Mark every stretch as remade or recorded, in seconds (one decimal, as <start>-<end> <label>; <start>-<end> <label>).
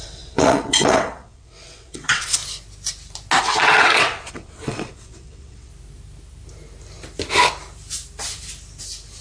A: 0.0-2.4 remade; 2.4-3.4 recorded; 3.4-5.7 remade; 5.7-9.2 recorded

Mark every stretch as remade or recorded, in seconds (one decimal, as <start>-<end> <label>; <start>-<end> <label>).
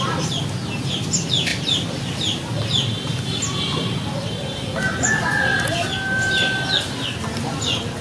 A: 0.0-8.0 recorded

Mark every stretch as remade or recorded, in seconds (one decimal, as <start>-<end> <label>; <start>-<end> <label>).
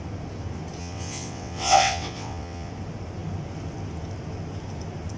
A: 0.0-0.8 recorded; 0.8-2.7 remade; 2.7-5.2 recorded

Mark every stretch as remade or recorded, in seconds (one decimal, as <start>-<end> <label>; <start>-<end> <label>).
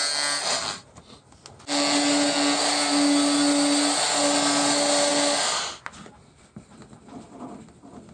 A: 0.0-8.1 recorded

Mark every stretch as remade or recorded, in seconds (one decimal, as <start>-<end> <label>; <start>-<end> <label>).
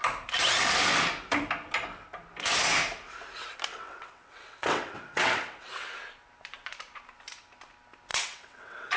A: 0.0-3.7 recorded; 3.7-5.9 remade; 5.9-8.1 recorded; 8.1-9.0 remade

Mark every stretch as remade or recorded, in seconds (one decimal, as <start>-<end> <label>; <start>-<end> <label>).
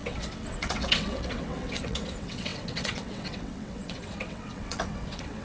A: 0.0-5.4 remade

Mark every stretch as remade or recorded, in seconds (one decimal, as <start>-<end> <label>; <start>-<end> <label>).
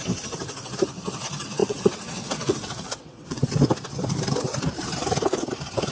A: 0.0-1.6 recorded; 1.6-3.4 remade; 3.4-5.9 recorded